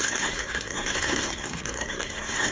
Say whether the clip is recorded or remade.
remade